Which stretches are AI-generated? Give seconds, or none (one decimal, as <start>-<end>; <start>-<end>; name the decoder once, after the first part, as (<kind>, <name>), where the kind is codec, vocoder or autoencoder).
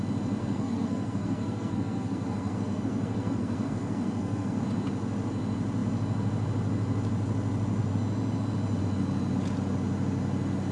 0.4-4.6 (codec, SNAC)